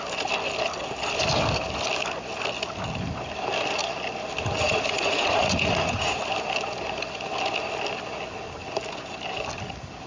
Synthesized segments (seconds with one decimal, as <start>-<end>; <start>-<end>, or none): 4.6-6.2